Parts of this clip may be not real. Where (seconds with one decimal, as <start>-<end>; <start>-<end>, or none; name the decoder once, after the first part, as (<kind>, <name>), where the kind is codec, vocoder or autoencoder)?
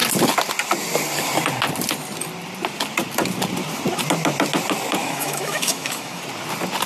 5.0-6.2 (autoencoder, DAC-VAE)